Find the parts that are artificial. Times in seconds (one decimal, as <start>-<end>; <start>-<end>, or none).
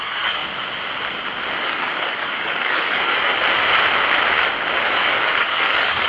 0.0-0.4; 1.6-3.3; 4.9-6.1